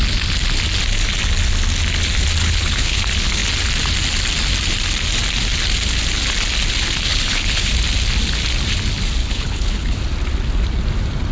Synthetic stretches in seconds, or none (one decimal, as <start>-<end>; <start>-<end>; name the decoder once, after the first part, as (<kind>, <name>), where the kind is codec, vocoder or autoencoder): 2.4-3.0 (codec, HILCodec); 7.1-7.7; 9.2-10.0